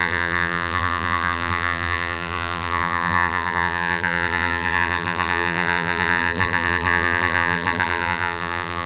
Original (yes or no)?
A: no